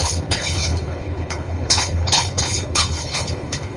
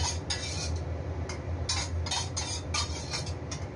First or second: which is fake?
first